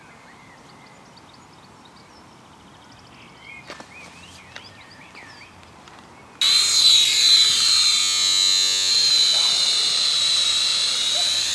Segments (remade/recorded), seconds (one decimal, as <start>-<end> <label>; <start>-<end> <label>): 0.0-8.0 recorded; 8.0-8.9 remade; 8.9-11.5 recorded